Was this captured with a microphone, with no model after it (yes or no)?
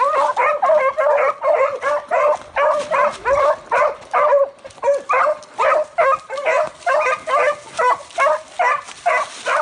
yes